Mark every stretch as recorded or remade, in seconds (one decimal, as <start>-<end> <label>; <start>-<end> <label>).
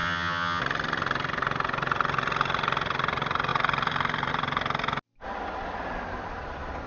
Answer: 0.0-0.6 remade; 0.6-6.9 recorded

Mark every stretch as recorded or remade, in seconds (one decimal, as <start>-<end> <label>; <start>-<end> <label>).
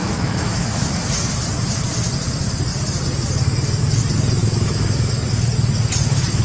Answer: 0.0-0.9 remade; 0.9-4.4 recorded; 4.4-5.1 remade; 5.1-6.4 recorded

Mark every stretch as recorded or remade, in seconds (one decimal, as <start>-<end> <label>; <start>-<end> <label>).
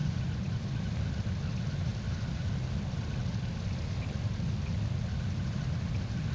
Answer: 0.0-0.6 remade; 0.6-6.3 recorded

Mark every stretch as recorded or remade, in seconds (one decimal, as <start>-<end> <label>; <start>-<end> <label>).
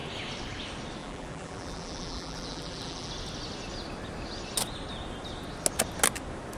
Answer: 0.0-1.0 recorded; 1.0-3.1 remade; 3.1-6.6 recorded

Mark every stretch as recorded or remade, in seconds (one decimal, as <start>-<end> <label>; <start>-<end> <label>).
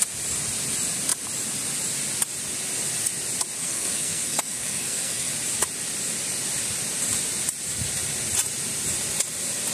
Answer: 0.0-3.6 recorded; 3.6-5.3 remade; 5.3-9.7 recorded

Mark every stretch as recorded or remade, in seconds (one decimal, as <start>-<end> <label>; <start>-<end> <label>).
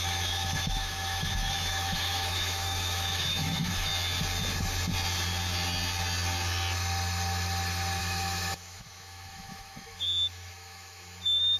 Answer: 0.0-3.9 remade; 3.9-8.0 recorded; 8.0-11.6 remade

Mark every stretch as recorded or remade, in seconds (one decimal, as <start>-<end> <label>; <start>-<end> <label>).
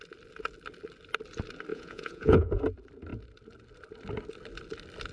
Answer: 0.0-1.7 recorded; 1.7-2.6 remade; 2.6-5.1 recorded